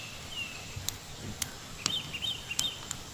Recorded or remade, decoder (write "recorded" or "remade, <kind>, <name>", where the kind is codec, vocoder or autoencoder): recorded